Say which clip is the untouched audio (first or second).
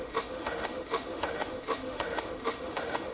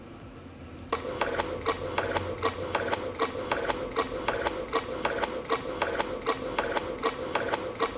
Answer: second